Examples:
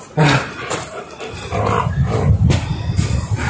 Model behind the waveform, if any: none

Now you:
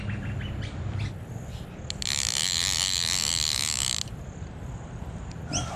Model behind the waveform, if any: none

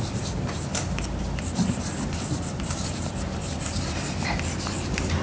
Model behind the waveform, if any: vocoder, BigVGAN v2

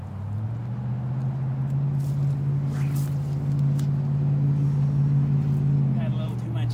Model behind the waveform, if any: none